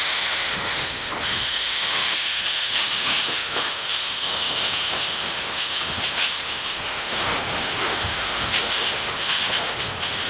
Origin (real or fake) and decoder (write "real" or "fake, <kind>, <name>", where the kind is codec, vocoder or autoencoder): fake, autoencoder, DAC-VAE